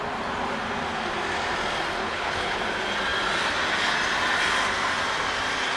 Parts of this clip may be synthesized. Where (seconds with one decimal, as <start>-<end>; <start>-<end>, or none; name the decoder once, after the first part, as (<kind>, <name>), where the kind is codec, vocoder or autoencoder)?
2.0-2.6 (codec, HILCodec)